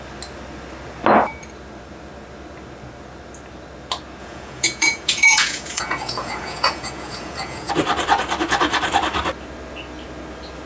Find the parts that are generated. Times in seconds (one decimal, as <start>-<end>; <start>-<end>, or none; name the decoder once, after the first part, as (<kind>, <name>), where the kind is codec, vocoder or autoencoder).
4.2-7.7 (vocoder, Vocos)